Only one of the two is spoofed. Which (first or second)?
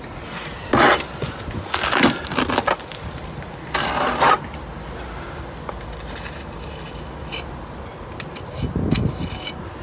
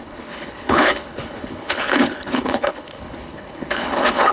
second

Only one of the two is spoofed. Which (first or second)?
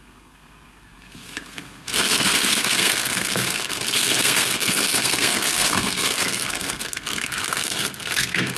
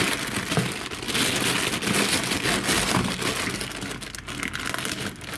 first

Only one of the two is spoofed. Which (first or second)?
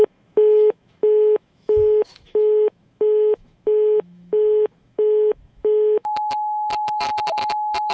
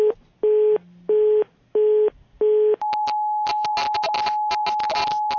first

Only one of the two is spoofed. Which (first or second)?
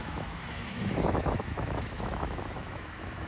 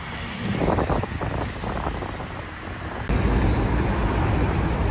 first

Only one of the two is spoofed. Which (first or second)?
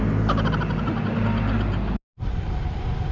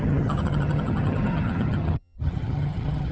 second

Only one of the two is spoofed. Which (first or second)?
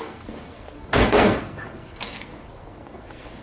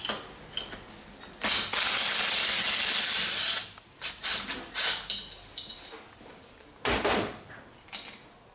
first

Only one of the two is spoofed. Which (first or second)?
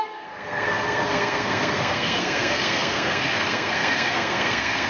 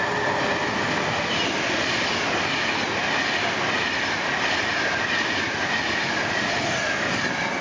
first